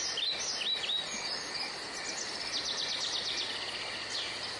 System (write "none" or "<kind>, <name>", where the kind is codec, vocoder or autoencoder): none